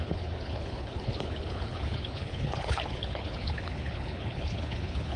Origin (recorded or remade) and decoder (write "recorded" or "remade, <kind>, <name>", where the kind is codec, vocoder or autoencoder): remade, codec, HILCodec